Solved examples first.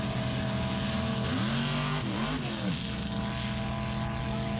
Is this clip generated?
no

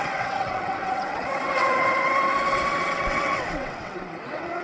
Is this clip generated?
yes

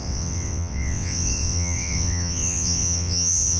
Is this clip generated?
yes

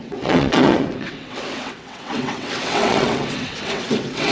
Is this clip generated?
yes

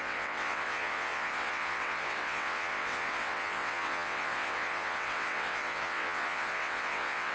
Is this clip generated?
yes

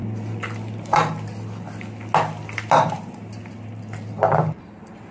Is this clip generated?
no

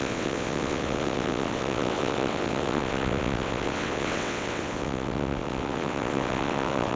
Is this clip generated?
yes